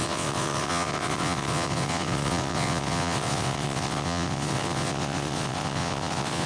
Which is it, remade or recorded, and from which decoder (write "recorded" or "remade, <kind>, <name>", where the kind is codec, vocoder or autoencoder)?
remade, vocoder, WaveNeXt